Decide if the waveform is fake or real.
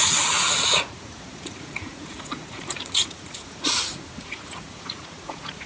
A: fake